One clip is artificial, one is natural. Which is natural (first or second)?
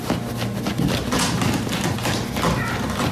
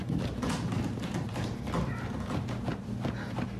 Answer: first